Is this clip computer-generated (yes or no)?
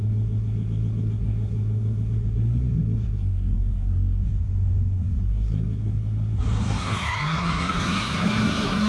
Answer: yes